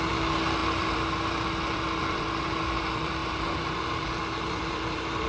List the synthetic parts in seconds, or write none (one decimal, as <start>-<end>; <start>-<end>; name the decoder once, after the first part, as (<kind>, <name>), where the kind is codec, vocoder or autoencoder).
0.0-5.3 (vocoder, BigVGAN v2)